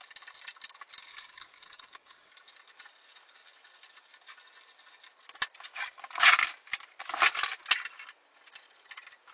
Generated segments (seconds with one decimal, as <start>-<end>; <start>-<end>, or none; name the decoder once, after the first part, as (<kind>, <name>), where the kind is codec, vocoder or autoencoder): 1.1-2.3 (codec, DAC)